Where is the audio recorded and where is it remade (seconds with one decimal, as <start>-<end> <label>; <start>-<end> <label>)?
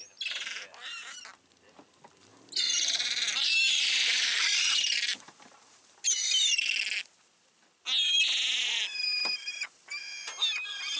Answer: 0.0-2.3 recorded; 2.3-6.3 remade; 6.3-11.0 recorded